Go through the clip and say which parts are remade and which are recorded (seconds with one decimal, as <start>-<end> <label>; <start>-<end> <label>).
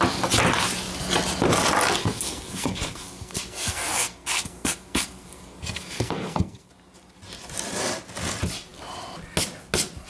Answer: 0.0-2.0 recorded; 2.0-6.7 remade; 6.7-10.1 recorded